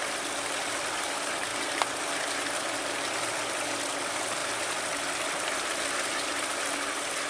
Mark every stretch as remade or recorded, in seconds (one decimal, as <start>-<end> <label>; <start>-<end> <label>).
0.0-7.3 recorded